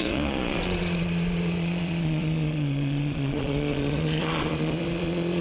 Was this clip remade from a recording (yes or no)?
yes